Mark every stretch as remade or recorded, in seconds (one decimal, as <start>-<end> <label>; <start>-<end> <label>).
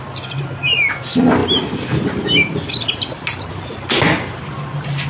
0.0-5.1 recorded